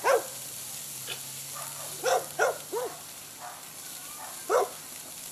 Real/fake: real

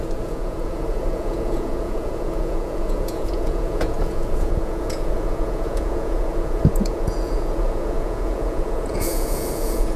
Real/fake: fake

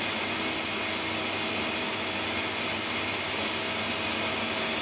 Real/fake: real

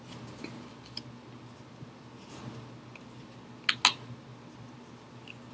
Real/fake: real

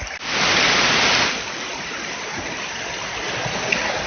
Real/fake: real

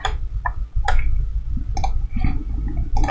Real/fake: real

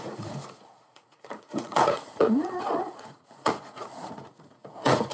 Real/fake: fake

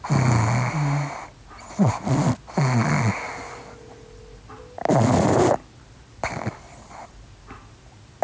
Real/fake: real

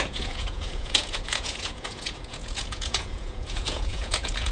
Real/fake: fake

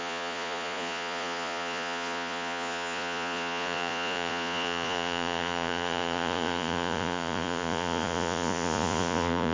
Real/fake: fake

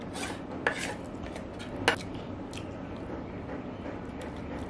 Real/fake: real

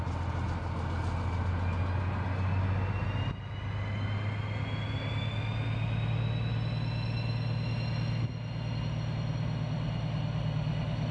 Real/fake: real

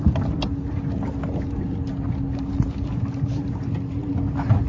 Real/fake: real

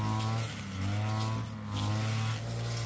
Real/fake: real